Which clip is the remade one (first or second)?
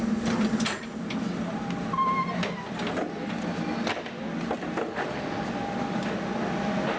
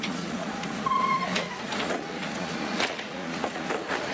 second